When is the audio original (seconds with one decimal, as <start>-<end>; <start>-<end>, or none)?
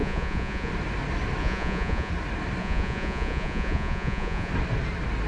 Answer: 0.7-1.4; 2.1-2.6; 4.5-5.3